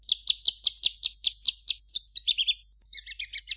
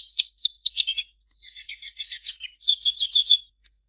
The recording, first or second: first